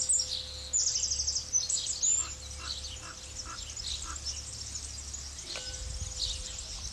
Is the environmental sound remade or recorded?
recorded